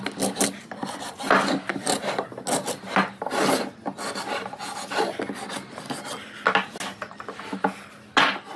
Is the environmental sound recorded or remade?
recorded